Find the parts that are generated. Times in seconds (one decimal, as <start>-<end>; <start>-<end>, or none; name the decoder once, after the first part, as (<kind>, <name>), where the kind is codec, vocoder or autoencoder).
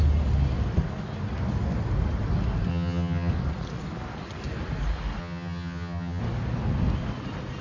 2.7-3.3 (vocoder, HiFi-GAN); 5.2-6.2